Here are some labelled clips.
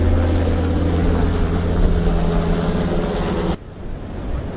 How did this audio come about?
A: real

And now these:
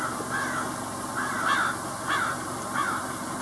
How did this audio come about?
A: real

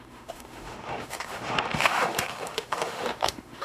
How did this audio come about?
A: fake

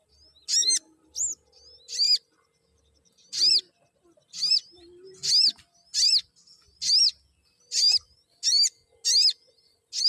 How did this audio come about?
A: real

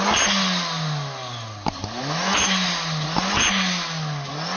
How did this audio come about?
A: real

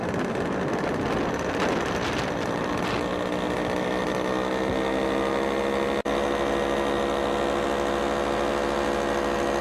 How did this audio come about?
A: real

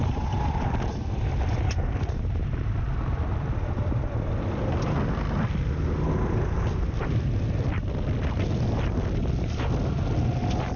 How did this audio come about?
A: real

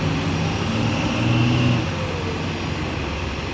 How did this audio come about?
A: real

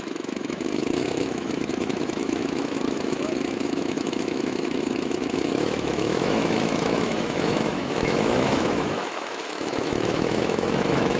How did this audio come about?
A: fake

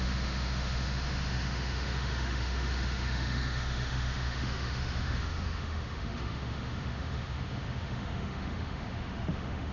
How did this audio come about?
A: fake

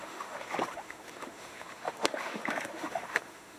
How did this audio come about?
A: fake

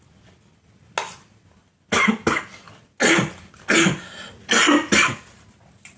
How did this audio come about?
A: real